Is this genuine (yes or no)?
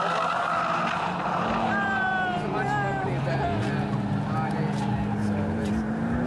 yes